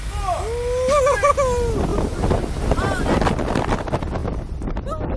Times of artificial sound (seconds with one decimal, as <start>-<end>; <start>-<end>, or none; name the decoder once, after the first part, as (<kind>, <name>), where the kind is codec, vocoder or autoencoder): 1.9-3.6 (vocoder, BigVGAN v2); 4.2-5.2

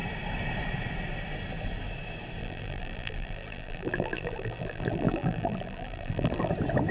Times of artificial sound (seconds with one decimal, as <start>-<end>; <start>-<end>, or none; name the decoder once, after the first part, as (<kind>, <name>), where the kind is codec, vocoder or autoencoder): 2.4-6.5 (vocoder, BigVGAN v2)

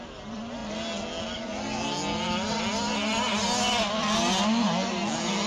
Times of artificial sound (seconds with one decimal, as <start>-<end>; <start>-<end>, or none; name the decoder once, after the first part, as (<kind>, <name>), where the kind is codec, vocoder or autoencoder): none

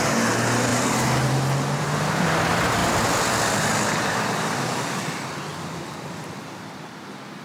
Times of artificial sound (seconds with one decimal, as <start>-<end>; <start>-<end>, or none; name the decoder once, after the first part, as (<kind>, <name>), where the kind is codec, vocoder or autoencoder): 2.8-6.9 (vocoder, BigVGAN v2)

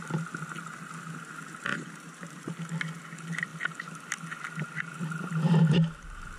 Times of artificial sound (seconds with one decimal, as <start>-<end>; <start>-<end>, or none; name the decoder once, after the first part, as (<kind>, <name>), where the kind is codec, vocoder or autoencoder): 1.7-2.5 (vocoder, BigVGAN v2)